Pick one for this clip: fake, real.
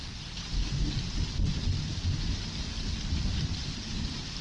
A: real